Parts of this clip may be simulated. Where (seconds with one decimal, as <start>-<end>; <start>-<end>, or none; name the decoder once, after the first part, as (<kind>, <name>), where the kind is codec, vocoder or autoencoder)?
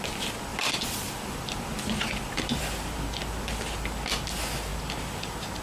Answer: 0.5-2.6 (vocoder, BigVGAN v2)